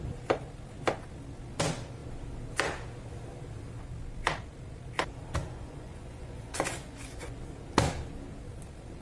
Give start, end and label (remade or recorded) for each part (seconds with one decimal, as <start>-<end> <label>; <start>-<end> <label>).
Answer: 0.0-5.4 recorded; 5.4-7.4 remade; 7.4-9.0 recorded